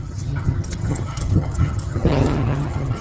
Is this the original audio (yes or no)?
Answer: no